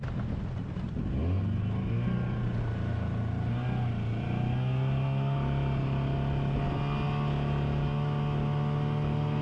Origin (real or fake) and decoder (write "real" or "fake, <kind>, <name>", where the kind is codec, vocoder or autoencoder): real